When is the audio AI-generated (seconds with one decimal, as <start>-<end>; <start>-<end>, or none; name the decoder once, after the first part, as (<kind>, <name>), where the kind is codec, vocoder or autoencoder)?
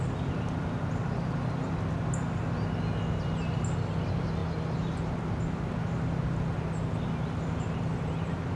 none